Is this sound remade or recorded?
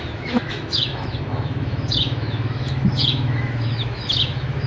remade